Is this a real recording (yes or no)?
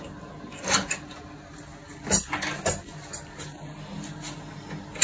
yes